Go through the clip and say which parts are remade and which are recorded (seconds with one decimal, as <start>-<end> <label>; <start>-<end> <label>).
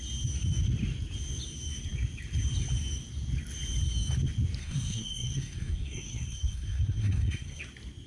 0.0-4.6 recorded; 4.6-7.6 remade; 7.6-8.1 recorded